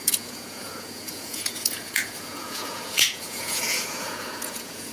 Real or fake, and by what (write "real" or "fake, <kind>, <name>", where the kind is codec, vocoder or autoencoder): fake, vocoder, Vocos